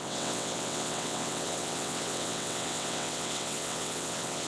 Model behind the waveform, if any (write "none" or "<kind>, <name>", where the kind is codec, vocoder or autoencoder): vocoder, WaveNeXt